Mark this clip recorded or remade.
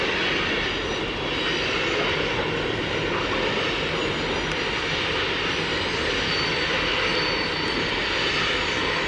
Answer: recorded